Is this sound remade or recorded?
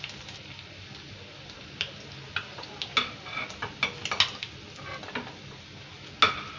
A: recorded